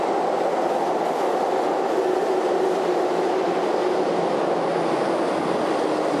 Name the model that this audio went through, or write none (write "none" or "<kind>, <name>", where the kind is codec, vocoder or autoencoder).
none